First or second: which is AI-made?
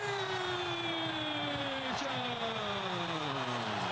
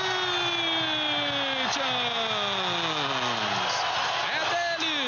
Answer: first